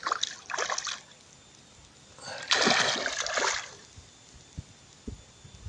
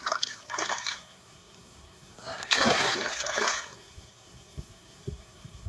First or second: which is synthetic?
second